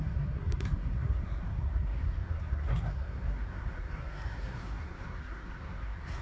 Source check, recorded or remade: remade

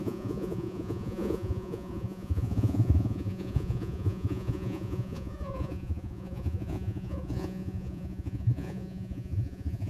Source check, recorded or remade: remade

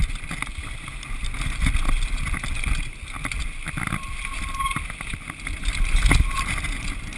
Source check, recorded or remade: recorded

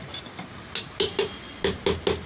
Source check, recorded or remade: recorded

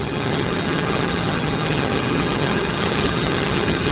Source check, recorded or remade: remade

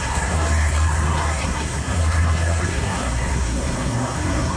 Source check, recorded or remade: remade